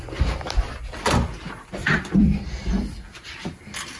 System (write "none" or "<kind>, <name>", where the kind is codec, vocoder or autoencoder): vocoder, BigVGAN v2